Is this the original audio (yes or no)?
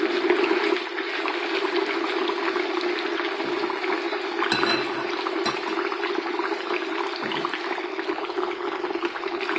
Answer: yes